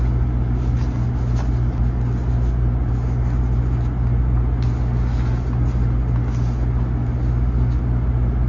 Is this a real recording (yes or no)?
yes